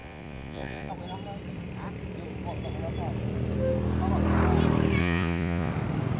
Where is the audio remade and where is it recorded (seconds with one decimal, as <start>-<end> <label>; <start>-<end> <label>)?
0.0-0.9 remade; 0.9-5.0 recorded; 5.0-5.7 remade; 5.7-6.2 recorded